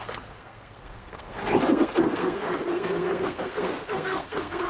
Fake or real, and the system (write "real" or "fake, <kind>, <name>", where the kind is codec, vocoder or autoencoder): fake, codec, SNAC